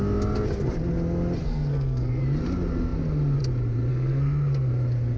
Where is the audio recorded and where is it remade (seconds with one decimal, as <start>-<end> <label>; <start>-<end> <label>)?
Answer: 0.0-1.4 recorded; 1.4-2.2 remade; 2.2-3.9 recorded; 3.9-4.7 remade; 4.7-5.2 recorded